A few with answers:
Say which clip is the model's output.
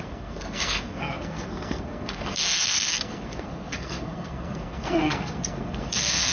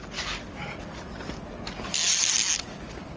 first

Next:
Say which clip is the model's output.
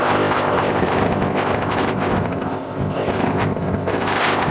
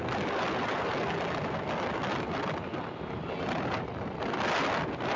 first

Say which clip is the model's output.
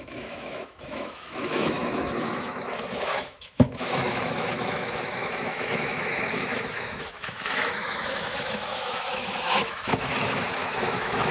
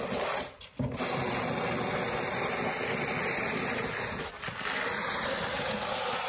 first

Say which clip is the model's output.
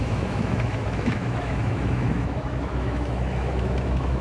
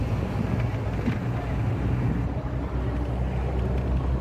first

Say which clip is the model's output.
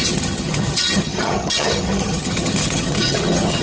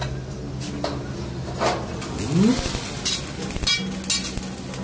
first